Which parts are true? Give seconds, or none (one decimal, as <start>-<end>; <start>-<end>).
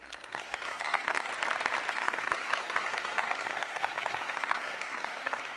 1.3-1.9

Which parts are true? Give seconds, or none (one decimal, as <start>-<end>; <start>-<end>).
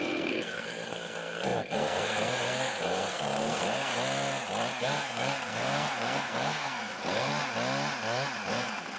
3.9-4.8; 7.3-8.5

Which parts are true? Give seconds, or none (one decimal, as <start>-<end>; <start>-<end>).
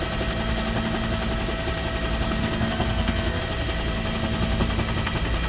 0.0-2.4; 3.4-5.5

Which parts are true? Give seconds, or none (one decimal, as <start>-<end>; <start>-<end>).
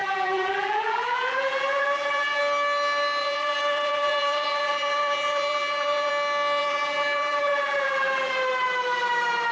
2.4-3.2; 6.1-6.6; 8.3-9.5